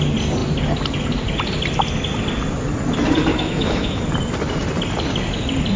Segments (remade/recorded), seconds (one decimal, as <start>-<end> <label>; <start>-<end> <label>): 0.0-3.3 recorded; 3.3-4.0 remade; 4.0-5.8 recorded

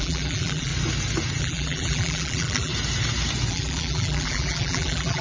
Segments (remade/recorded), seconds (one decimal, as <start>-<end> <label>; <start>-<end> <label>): 0.0-0.7 remade; 0.7-1.4 recorded; 1.4-2.7 remade; 2.7-3.5 recorded; 3.5-5.2 remade